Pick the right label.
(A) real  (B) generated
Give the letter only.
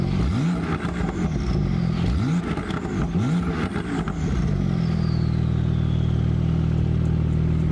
A